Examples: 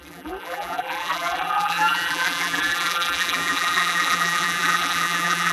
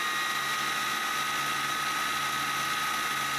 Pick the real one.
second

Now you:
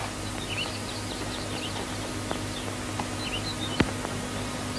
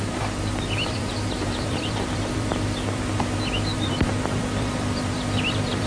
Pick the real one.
first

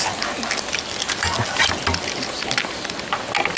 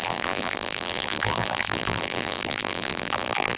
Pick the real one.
first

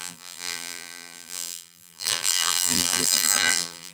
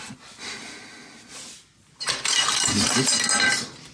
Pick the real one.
second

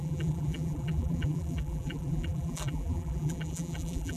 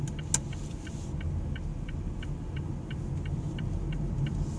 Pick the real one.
second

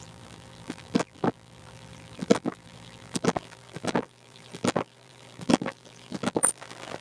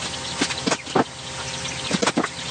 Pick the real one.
second